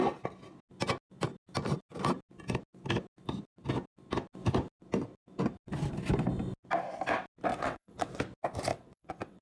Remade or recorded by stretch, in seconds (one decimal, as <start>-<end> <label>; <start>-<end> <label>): 0.0-7.5 recorded; 7.5-8.2 remade; 8.2-8.7 recorded; 8.7-9.4 remade